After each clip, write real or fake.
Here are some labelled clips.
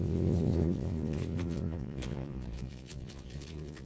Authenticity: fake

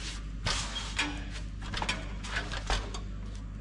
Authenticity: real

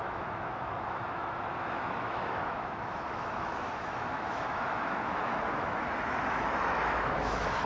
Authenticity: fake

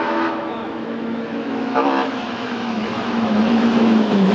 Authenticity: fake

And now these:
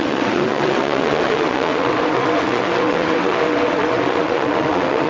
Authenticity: fake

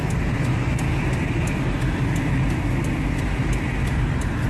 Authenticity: real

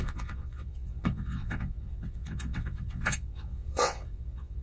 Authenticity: fake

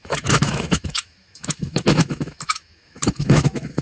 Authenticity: fake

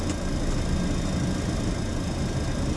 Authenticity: real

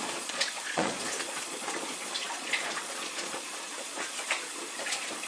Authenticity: fake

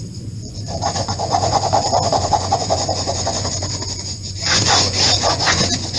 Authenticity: fake